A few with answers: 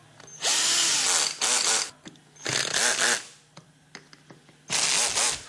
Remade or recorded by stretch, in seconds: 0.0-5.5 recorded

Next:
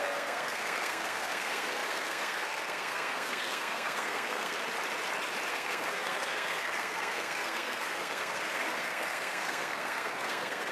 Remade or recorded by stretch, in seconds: 0.0-4.6 remade; 4.6-5.5 recorded; 5.5-10.7 remade

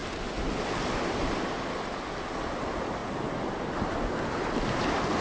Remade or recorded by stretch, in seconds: 0.0-5.2 recorded